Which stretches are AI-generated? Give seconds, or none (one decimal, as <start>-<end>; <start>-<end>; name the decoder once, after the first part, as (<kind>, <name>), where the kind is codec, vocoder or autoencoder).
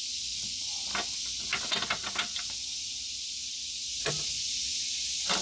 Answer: none